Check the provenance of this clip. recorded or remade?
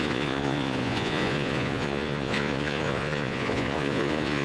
remade